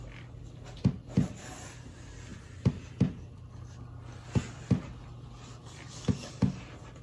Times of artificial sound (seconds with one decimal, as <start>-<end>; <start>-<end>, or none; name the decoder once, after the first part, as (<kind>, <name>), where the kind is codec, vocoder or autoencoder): none

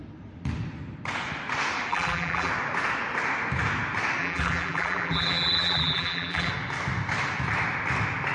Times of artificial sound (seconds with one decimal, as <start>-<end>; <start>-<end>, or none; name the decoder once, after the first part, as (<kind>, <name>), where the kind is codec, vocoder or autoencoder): 1.9-2.5 (vocoder, BigVGAN v2); 4.2-6.5

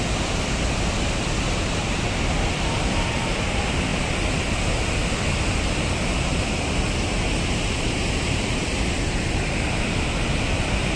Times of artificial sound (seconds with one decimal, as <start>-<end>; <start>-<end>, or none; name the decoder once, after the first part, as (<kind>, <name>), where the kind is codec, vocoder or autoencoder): none

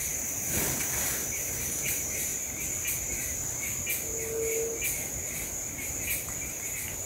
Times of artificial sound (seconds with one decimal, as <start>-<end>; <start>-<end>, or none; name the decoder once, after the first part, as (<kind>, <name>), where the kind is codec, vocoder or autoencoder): 0.0-2.3 (vocoder, BigVGAN v2); 6.6-7.1

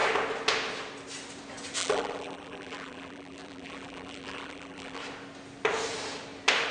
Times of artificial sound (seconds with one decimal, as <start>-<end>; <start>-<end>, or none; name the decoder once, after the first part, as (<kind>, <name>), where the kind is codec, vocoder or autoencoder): 1.8-5.0 (vocoder, BigVGAN v2)

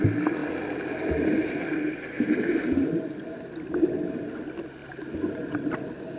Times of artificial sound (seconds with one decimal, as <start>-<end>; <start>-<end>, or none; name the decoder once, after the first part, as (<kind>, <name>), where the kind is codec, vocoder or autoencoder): none

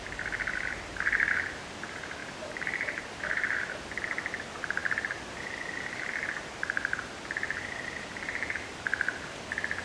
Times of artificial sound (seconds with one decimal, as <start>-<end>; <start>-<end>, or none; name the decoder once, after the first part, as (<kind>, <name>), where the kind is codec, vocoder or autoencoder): 2.2-3.2 (vocoder, BigVGAN v2)